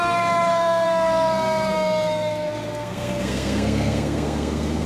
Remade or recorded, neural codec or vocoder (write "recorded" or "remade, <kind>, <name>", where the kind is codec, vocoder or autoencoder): remade, codec, SNAC